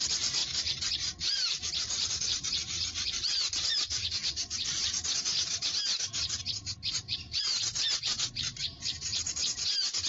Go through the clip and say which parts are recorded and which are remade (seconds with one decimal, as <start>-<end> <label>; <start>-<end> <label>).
0.0-5.0 remade; 5.0-7.0 recorded; 7.0-9.2 remade; 9.2-9.7 recorded; 9.7-10.1 remade